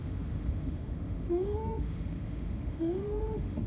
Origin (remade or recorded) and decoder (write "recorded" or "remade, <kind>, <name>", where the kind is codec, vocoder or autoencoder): remade, autoencoder, DAC-VAE